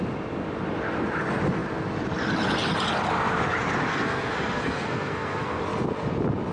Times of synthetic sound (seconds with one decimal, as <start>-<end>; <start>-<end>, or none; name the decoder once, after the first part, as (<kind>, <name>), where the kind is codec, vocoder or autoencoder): 3.9-5.6 (codec, SNAC)